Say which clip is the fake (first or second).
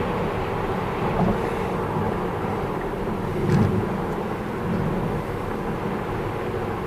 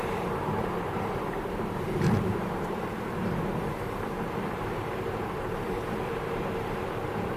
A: second